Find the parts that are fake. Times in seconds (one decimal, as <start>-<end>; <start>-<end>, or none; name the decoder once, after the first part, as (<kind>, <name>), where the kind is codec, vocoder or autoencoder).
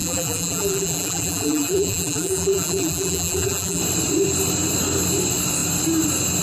0.0-3.8 (vocoder, BigVGAN v2)